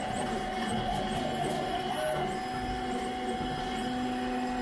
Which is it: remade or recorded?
recorded